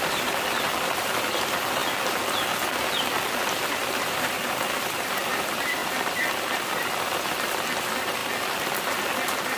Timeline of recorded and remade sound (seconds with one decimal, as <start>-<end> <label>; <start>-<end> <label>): 0.0-1.8 remade; 1.8-3.4 recorded; 3.4-8.2 remade; 8.2-9.6 recorded